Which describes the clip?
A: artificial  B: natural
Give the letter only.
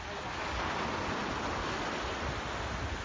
B